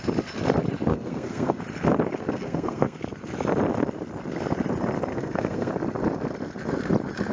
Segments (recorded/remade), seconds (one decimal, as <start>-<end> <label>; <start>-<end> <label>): 0.0-0.9 recorded; 0.9-1.6 remade; 1.6-2.2 recorded; 2.2-3.0 remade; 3.0-5.1 recorded; 5.1-5.7 remade; 5.7-7.3 recorded